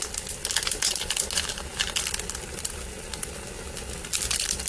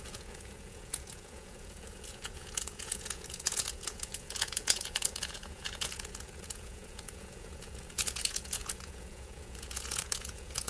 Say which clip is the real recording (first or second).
first